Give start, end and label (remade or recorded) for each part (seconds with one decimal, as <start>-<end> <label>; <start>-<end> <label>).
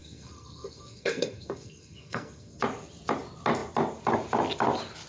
0.0-2.6 remade; 2.6-5.1 recorded